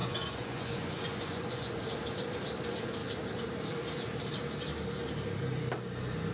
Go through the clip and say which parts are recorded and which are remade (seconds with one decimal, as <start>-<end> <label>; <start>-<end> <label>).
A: 0.0-1.8 remade; 1.8-6.3 recorded